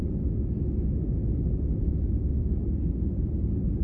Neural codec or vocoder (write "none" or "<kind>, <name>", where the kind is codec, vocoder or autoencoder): none